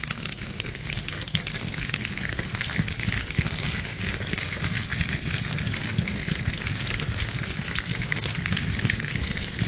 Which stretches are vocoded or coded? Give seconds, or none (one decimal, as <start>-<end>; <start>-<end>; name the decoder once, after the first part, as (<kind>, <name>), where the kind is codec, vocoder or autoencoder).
0.0-9.7 (codec, SNAC)